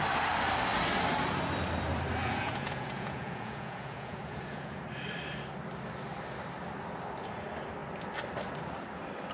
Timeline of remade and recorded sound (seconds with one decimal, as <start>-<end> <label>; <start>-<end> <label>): 0.0-2.2 recorded; 2.2-4.8 remade; 4.8-9.3 recorded